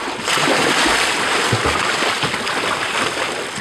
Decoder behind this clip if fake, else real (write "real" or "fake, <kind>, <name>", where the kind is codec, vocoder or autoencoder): real